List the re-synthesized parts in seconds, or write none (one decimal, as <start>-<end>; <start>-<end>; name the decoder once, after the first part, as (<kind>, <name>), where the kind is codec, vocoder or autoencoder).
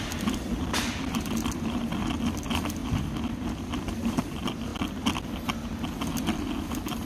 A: 0.0-4.7 (vocoder, BigVGAN v2)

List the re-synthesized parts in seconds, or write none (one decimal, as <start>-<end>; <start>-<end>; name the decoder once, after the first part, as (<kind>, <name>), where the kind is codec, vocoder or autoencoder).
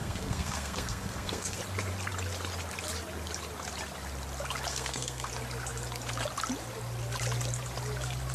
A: 0.0-1.6 (codec, SNAC); 4.7-5.3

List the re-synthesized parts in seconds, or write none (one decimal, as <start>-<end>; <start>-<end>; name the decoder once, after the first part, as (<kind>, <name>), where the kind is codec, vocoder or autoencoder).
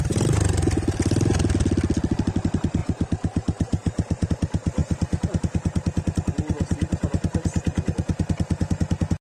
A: 2.8-4.3 (vocoder, BigVGAN v2)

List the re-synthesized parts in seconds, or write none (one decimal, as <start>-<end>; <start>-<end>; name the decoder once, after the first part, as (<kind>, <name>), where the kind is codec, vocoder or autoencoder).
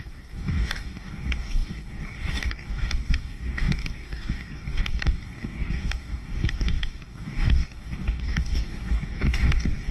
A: 0.0-9.9 (codec, DAC)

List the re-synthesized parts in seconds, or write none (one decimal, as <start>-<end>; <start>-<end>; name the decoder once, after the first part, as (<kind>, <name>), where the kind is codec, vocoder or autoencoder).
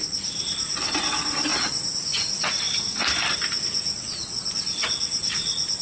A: none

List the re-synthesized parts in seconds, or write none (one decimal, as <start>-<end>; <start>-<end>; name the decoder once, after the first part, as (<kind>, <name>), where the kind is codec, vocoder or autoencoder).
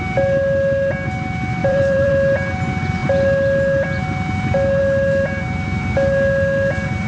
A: 1.6-2.1 (vocoder, BigVGAN v2)